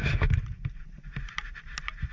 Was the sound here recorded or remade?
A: recorded